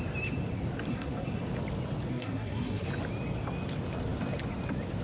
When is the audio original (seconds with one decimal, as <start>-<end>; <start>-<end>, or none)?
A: 0.0-0.9; 1.4-2.1; 2.9-5.0